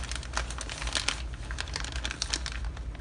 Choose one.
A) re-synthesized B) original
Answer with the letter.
B